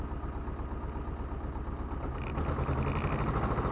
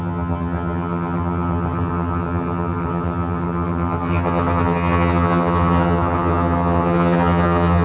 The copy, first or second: second